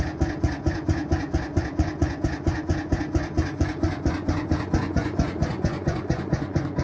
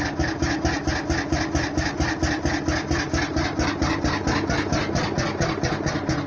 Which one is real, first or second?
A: second